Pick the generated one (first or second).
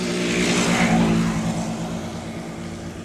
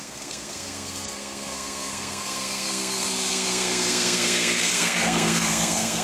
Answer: second